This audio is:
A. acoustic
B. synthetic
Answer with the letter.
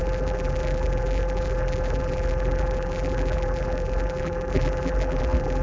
B